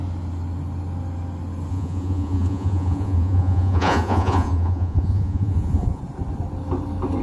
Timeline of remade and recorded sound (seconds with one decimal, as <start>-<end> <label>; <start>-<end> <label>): 0.0-1.7 recorded; 1.7-6.0 remade; 6.0-7.2 recorded